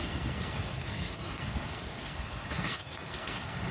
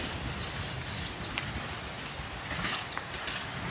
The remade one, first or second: first